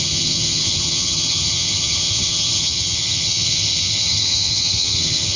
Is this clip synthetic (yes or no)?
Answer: yes